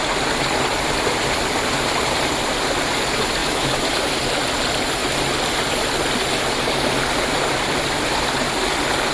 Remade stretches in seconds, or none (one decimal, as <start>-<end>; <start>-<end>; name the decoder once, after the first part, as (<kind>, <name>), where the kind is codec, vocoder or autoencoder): 3.4-4.0 (autoencoder, DAC-VAE)